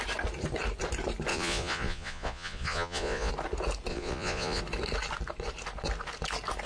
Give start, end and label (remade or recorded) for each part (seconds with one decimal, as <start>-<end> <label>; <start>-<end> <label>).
0.0-1.3 recorded; 1.3-3.3 remade; 3.3-3.9 recorded; 3.9-4.6 remade; 4.6-6.7 recorded